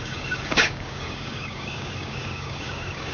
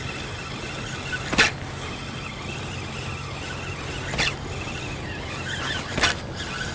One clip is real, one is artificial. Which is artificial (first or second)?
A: first